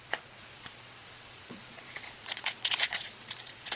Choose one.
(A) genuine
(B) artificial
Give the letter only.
B